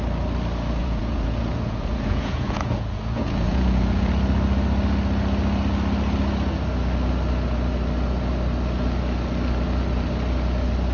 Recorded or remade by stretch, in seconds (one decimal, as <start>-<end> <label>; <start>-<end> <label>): 0.0-0.8 recorded; 0.8-4.1 remade; 4.1-10.9 recorded